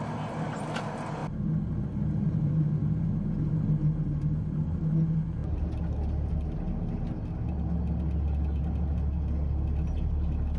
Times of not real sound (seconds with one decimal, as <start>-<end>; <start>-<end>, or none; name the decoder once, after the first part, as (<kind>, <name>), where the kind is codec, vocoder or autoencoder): none